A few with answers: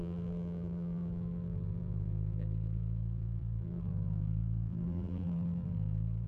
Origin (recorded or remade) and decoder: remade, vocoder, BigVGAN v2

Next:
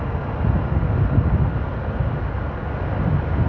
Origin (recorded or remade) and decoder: recorded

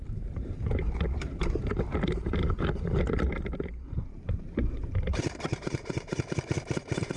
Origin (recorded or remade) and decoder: remade, vocoder, BigVGAN v2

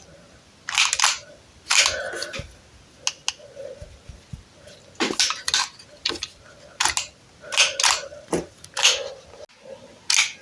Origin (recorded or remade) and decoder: recorded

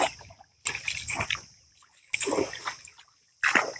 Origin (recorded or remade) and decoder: recorded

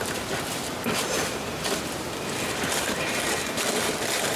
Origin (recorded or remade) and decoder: remade, vocoder, BigVGAN v2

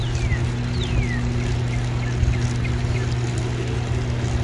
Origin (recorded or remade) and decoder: recorded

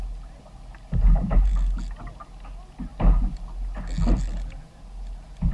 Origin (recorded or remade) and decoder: recorded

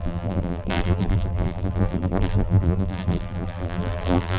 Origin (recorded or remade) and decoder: remade, vocoder, BigVGAN v2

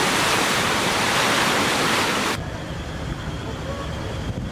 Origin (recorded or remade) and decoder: recorded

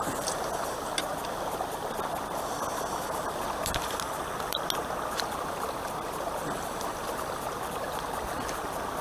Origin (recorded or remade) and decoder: recorded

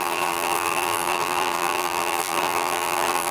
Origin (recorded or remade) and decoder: remade, vocoder, BigVGAN v2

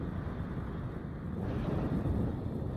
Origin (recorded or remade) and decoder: remade, vocoder, BigVGAN v2